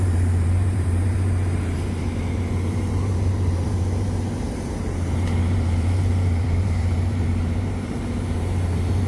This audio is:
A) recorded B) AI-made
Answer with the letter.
B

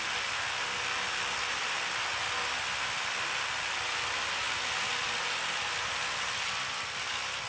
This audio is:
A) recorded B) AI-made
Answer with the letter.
A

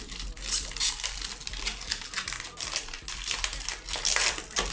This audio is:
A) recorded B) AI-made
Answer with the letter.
A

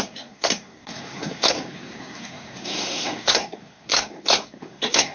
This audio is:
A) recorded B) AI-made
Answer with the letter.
B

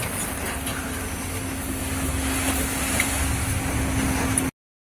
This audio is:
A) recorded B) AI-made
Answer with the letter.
A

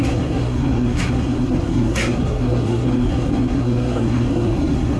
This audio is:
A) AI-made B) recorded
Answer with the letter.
A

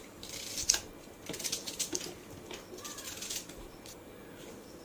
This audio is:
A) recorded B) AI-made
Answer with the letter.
A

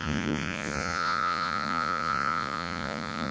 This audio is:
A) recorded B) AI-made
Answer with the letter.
B